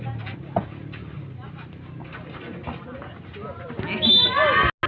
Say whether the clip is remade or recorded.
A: recorded